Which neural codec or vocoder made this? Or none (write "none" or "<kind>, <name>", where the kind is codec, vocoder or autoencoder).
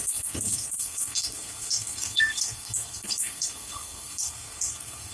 codec, SNAC